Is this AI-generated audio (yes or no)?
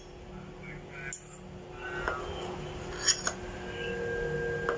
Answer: no